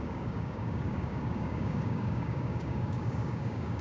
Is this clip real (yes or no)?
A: no